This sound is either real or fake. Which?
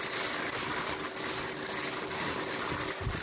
real